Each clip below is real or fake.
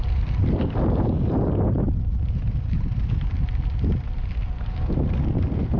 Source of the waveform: real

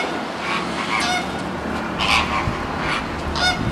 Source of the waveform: real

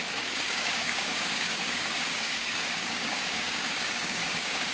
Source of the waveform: fake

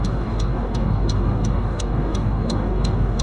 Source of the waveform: fake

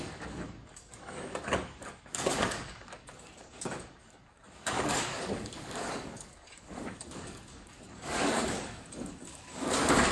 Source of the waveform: fake